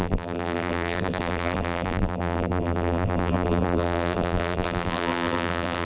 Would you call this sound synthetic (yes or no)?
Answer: yes